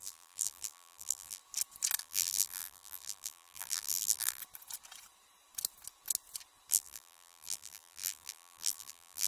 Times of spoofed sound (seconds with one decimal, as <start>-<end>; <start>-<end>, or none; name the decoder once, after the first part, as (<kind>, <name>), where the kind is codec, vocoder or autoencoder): 0.0-1.4 (vocoder, BigVGAN v2); 2.0-4.4; 6.7-9.3